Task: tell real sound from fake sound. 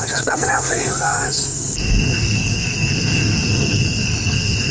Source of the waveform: fake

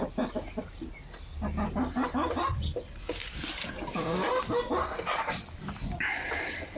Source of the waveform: real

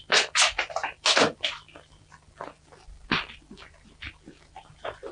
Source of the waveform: real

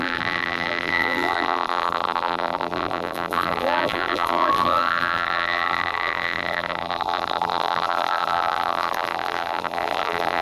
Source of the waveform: fake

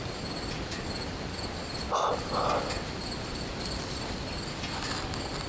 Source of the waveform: real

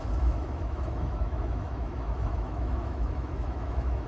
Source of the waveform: fake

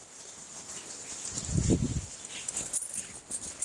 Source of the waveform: real